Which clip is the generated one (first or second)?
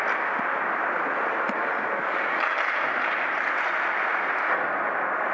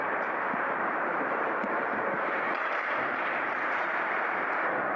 second